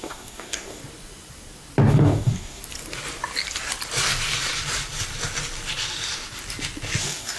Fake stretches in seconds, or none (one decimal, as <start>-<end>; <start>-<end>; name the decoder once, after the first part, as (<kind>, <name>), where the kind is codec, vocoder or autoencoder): 0.0-0.8 (codec, DAC); 1.9-2.6; 7.0-7.4

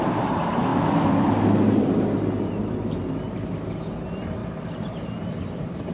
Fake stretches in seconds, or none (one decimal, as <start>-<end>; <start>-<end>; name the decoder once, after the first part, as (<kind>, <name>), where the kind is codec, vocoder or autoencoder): none

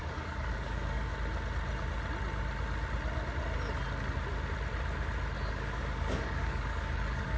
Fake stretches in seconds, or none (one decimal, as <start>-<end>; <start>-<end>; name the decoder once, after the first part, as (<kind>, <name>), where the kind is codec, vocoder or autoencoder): 0.0-1.1 (codec, DAC); 5.5-7.4

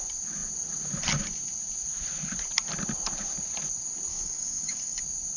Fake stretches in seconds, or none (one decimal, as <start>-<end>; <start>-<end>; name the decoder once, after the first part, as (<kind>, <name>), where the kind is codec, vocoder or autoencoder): 4.1-5.0 (codec, DAC)

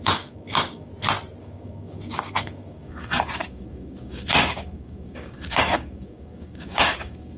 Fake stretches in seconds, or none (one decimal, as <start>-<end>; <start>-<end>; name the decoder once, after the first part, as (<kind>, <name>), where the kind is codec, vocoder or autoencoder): 0.0-0.9 (codec, DAC); 1.4-7.4

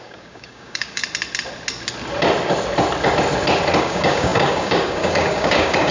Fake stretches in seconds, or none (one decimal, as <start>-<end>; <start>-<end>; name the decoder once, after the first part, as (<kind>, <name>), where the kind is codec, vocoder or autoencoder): 0.0-1.0 (codec, DAC); 3.8-5.9